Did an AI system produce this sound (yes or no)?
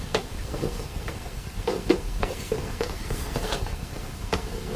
yes